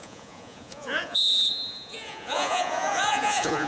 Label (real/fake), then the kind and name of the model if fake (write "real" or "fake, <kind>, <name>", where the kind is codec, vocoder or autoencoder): fake, vocoder, Vocos